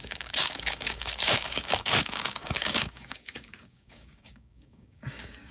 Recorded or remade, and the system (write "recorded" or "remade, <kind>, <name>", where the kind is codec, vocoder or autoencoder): remade, codec, DAC